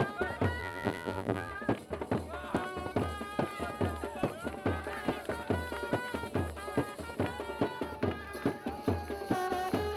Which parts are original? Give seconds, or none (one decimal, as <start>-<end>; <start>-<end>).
0.0-0.6; 1.5-10.0